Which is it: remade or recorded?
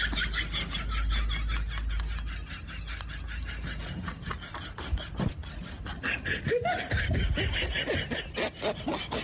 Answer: recorded